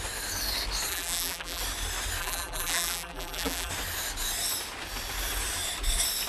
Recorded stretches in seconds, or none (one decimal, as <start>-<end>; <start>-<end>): 0.0-0.9; 1.6-2.2; 3.7-6.3